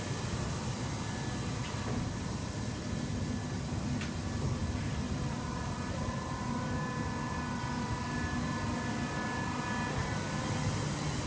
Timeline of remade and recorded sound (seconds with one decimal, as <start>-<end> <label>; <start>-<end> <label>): 0.0-11.3 recorded